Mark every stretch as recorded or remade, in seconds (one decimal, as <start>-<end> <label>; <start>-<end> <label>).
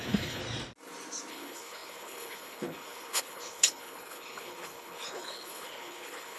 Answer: 0.0-0.4 remade; 0.4-1.3 recorded; 1.3-6.4 remade